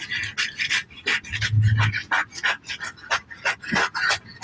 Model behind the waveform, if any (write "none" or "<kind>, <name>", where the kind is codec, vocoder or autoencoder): none